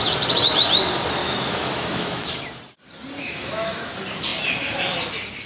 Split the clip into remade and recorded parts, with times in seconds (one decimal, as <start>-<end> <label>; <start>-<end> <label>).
0.0-1.2 recorded; 1.2-2.3 remade; 2.3-3.2 recorded; 3.2-3.9 remade; 3.9-5.5 recorded